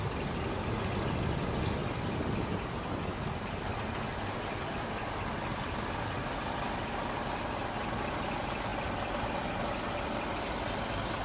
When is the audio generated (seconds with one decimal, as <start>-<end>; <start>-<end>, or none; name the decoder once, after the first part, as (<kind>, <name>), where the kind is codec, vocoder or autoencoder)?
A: none